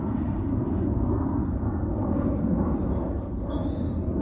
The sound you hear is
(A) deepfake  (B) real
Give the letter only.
B